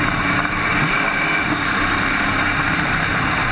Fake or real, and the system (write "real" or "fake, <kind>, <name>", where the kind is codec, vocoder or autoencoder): fake, vocoder, BigVGAN v2